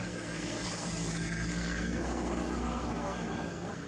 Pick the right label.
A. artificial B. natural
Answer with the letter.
A